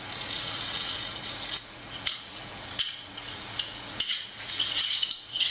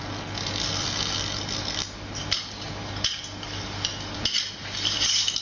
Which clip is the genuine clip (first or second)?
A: second